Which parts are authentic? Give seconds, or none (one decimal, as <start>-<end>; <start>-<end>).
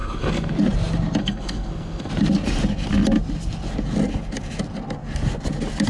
0.5-1.2; 2.1-5.9